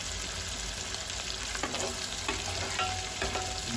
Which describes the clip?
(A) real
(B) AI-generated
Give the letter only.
A